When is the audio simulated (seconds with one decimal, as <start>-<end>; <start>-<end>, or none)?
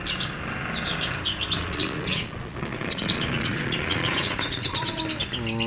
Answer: 1.6-5.0